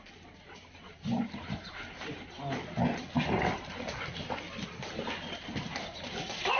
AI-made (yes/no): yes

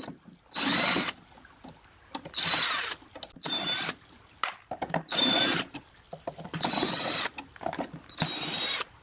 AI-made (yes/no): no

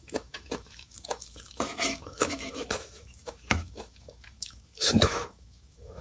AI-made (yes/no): yes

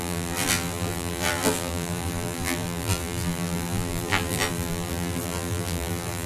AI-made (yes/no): yes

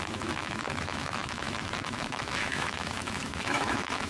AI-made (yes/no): yes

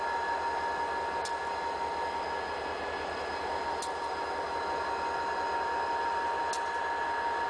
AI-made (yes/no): no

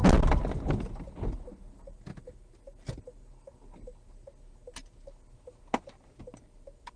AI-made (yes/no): no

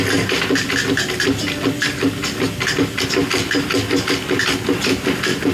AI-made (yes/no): no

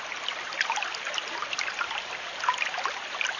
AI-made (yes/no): no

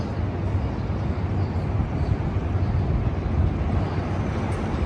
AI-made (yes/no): no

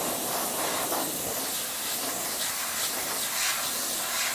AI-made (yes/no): no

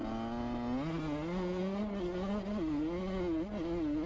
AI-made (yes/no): no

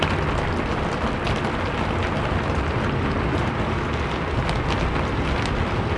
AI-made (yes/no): no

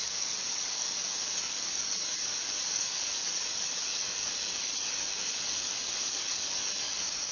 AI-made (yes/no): yes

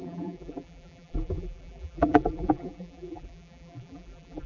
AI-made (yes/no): yes